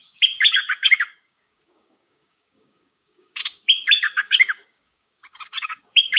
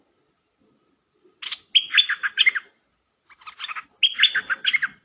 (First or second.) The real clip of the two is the second